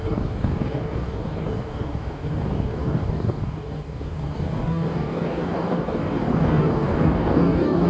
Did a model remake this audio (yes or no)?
yes